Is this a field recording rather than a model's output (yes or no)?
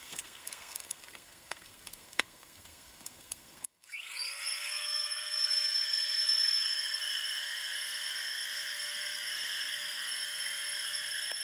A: no